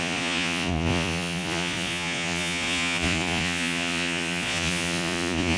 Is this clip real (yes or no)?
no